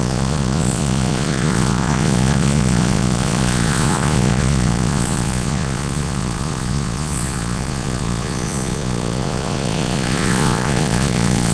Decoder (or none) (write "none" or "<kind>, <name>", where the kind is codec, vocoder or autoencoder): vocoder, Vocos